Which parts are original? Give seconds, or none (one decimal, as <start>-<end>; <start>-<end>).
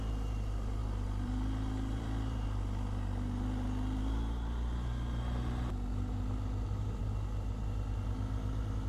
0.0-0.8; 2.6-7.0; 7.6-8.9